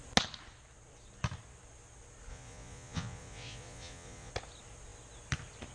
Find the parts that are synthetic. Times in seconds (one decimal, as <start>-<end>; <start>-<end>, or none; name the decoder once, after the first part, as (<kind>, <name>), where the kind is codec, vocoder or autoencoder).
2.3-4.3 (vocoder, Vocos)